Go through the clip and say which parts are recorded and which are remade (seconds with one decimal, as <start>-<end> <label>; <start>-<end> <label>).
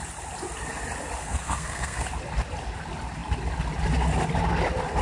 0.0-1.2 recorded; 1.2-2.1 remade; 2.1-5.0 recorded